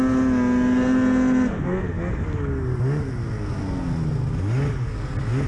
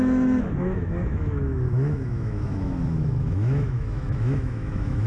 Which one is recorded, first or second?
first